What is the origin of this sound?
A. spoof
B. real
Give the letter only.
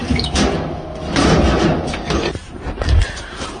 B